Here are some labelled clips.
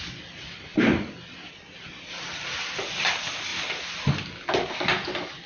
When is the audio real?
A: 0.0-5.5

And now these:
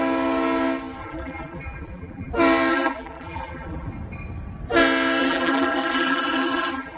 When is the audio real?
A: 0.0-1.0; 2.3-2.7; 3.9-5.2

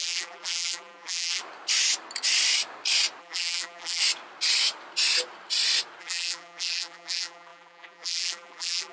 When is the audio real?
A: 1.4-3.2; 4.0-6.0

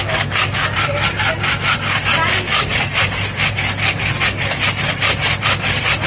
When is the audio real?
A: 0.0-2.5; 3.1-6.1